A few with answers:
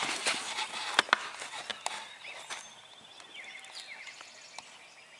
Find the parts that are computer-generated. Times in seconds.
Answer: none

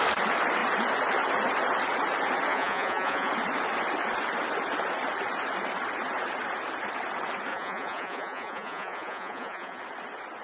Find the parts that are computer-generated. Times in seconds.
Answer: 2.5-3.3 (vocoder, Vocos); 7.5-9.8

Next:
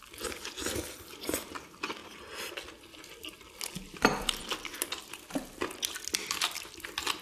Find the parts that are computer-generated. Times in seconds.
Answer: none